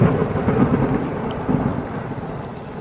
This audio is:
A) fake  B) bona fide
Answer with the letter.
B